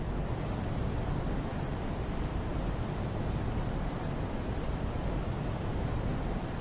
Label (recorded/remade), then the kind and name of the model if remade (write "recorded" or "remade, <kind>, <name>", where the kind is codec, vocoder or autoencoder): recorded